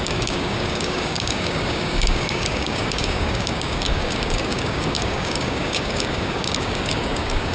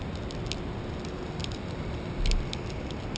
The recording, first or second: second